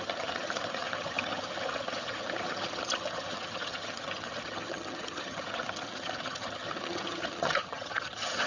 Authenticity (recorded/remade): remade